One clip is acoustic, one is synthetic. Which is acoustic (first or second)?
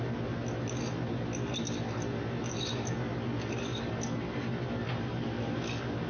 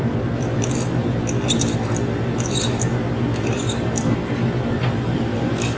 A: first